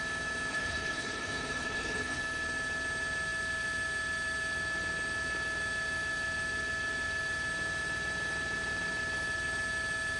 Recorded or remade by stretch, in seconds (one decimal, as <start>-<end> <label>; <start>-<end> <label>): 0.0-0.5 recorded; 0.5-2.2 remade; 2.2-10.2 recorded